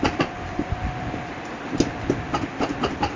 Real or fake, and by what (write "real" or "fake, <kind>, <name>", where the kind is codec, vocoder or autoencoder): real